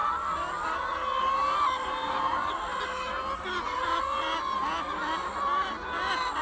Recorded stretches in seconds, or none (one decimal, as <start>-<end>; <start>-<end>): 0.0-6.4

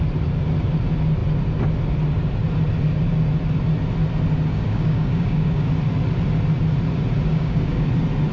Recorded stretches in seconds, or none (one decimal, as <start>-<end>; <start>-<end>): 0.0-4.5; 5.7-7.3; 7.9-8.3

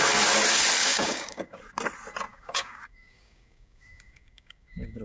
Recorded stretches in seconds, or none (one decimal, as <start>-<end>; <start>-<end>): 0.0-0.8; 1.6-2.3

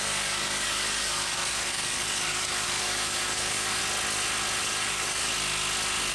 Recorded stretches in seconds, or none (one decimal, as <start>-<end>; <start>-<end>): 3.8-4.6; 5.3-6.1